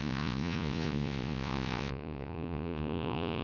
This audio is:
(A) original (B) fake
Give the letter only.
B